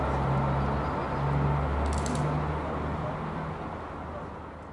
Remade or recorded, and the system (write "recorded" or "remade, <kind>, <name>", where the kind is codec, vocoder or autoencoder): recorded